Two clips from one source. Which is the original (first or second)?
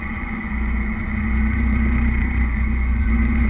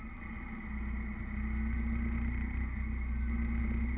second